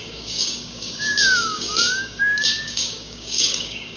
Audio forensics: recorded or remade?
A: remade